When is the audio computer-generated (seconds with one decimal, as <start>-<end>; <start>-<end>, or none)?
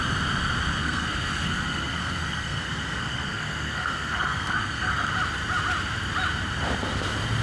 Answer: 0.8-5.1